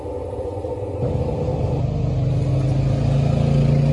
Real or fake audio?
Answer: real